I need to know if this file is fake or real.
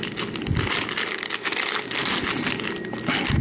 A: real